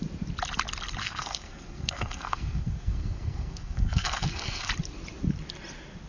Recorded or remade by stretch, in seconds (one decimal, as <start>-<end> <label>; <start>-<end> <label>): 0.0-1.0 recorded; 1.0-4.7 remade; 4.7-6.1 recorded